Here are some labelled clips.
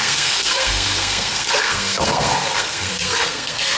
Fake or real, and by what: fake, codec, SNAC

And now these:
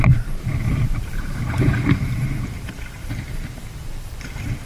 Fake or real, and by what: fake, vocoder, BigVGAN v2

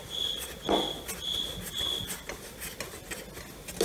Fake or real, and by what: real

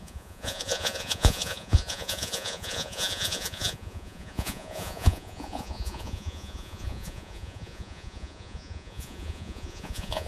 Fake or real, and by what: fake, vocoder, Vocos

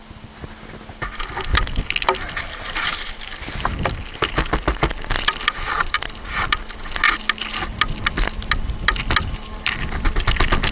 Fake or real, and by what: real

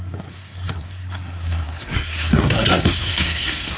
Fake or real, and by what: fake, codec, SNAC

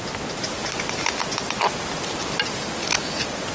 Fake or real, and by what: real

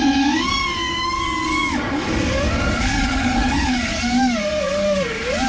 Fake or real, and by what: fake, codec, DAC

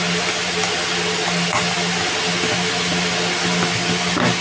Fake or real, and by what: real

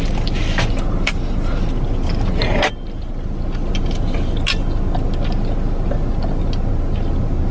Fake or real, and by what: real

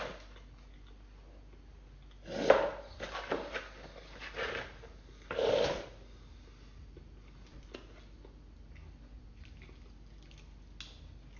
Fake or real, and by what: real